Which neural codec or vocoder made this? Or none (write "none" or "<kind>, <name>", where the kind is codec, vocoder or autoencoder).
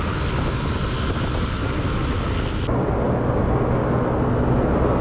none